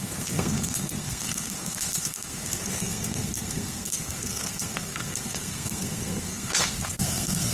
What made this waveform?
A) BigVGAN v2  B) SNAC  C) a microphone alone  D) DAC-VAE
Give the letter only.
B